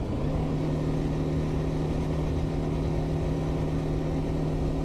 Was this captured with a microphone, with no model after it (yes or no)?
yes